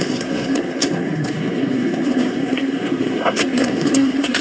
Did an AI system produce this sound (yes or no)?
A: yes